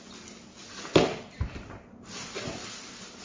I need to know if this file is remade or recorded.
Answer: recorded